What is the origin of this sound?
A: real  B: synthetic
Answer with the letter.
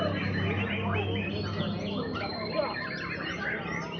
A